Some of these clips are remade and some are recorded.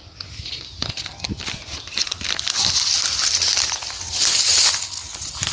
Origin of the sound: recorded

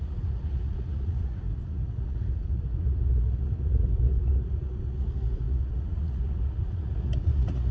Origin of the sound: remade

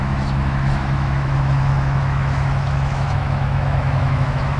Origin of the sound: remade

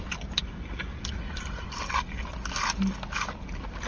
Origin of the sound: recorded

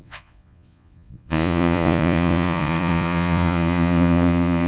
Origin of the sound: remade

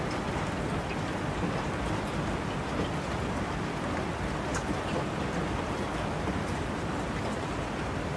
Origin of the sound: recorded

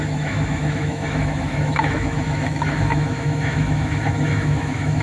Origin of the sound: remade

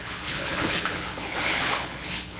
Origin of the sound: remade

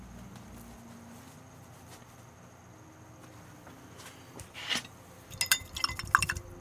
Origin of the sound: recorded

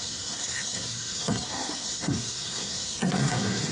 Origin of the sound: remade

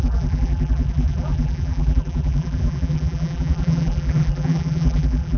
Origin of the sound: remade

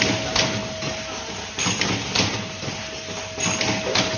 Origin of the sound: recorded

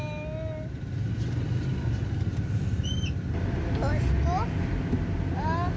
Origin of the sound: recorded